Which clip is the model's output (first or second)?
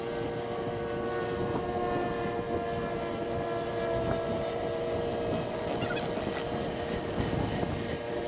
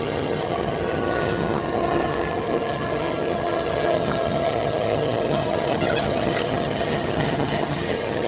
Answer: second